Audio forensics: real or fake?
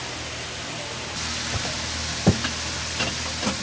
real